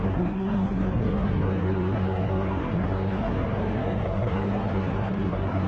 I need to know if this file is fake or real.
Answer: fake